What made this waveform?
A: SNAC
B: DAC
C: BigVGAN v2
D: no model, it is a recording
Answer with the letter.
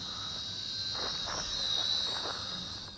D